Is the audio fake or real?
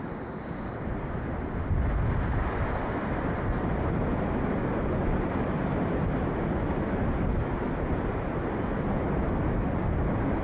real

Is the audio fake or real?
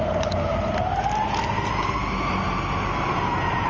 real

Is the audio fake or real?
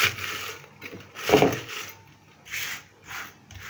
real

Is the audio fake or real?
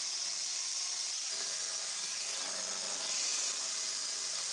real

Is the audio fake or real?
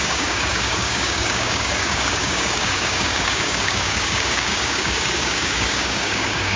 fake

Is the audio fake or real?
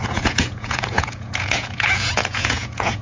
fake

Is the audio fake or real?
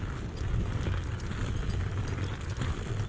real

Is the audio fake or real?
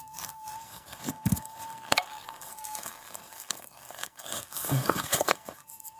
fake